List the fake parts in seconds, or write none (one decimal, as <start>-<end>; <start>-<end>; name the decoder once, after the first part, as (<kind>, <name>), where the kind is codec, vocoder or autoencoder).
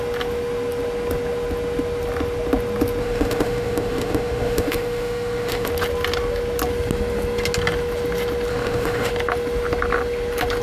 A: 3.0-5.7 (autoencoder, DAC-VAE); 8.5-9.1